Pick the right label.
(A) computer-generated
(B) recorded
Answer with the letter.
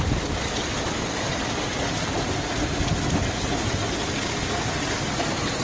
B